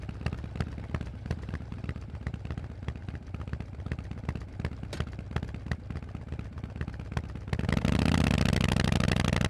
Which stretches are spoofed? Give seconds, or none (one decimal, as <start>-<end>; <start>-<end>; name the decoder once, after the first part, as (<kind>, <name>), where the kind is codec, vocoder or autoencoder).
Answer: 1.1-2.4 (vocoder, BigVGAN v2)